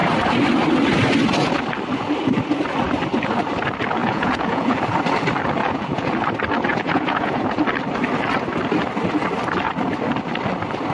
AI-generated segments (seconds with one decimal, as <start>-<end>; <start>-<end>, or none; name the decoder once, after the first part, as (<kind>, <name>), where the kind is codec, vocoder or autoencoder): 4.0-4.8 (vocoder, Vocos); 5.6-6.1; 6.7-7.6